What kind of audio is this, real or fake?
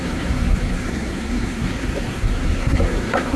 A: fake